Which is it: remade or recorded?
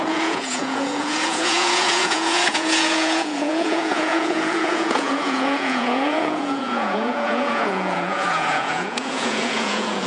remade